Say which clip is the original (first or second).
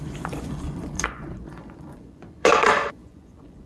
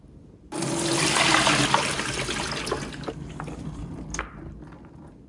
second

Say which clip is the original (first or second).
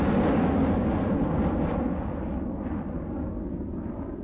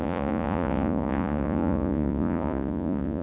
first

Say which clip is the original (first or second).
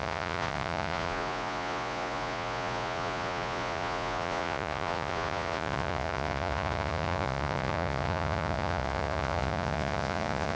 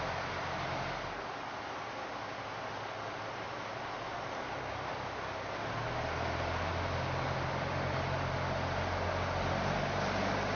second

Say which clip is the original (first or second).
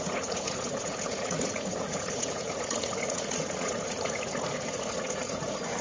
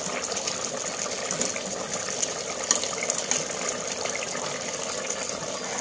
second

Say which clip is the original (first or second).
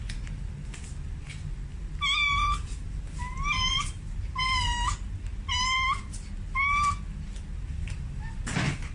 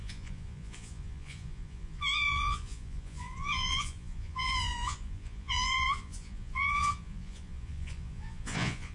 first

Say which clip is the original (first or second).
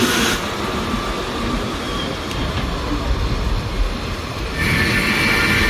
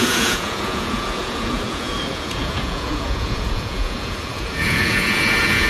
first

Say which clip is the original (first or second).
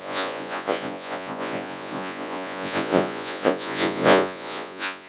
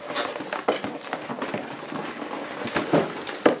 second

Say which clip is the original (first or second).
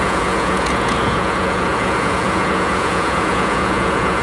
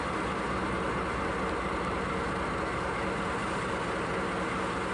second